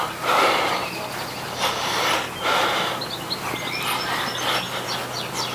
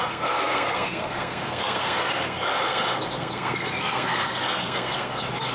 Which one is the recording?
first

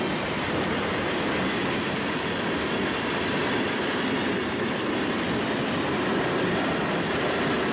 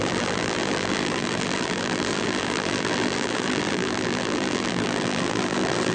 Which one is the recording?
first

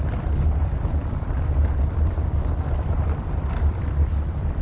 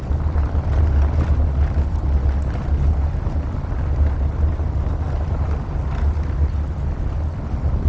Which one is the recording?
second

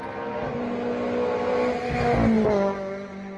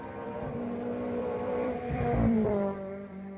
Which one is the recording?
first